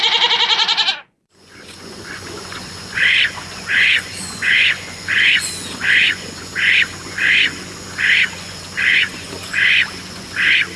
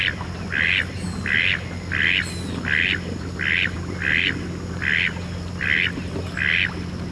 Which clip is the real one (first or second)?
second